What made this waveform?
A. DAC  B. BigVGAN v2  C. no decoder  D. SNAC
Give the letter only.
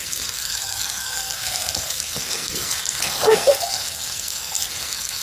D